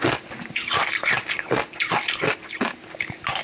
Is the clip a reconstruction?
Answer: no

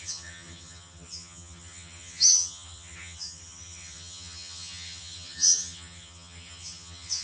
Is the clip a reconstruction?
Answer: yes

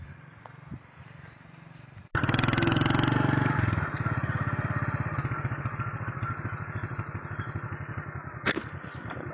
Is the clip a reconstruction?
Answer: no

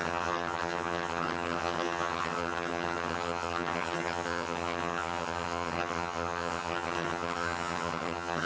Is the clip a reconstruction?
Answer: yes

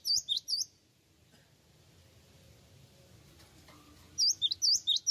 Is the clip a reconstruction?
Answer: no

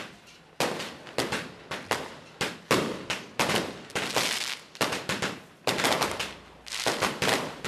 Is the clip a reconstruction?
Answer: no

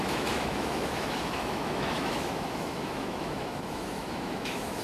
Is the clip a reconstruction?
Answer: yes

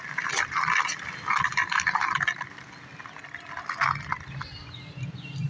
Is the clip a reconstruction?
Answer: no